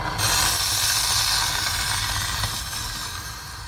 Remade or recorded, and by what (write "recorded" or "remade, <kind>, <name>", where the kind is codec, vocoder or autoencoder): recorded